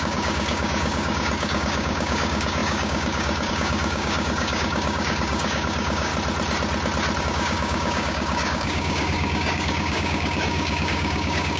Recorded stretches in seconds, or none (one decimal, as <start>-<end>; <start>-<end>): 6.1-7.2